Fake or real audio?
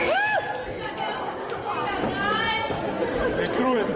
real